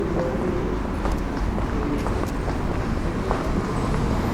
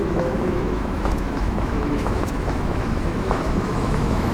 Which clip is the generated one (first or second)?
second